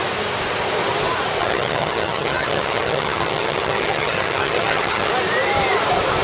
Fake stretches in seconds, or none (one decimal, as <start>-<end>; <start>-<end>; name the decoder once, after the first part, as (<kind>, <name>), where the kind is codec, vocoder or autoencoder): 1.4-5.1 (vocoder, HiFi-GAN)